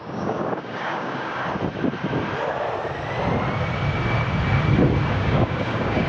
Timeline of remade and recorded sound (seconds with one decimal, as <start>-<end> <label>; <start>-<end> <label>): 0.0-1.4 remade; 1.4-5.1 recorded; 5.1-6.1 remade